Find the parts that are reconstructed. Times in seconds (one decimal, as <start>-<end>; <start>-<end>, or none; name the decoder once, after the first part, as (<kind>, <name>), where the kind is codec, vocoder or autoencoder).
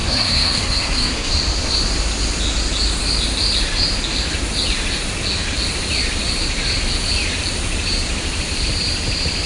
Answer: 0.0-1.3 (codec, SNAC)